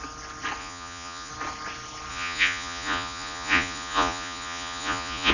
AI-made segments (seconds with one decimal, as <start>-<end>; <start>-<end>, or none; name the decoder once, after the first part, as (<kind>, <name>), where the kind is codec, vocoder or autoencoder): 0.6-1.3 (vocoder, Vocos); 2.1-5.3